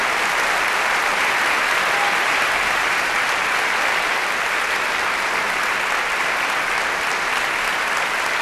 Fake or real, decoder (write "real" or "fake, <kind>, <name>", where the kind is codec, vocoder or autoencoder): real